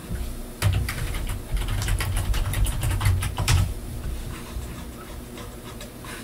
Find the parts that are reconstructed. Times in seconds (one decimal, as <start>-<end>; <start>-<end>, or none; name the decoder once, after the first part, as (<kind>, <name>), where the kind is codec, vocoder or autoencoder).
1.1-6.2 (vocoder, BigVGAN v2)